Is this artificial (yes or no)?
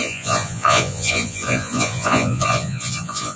yes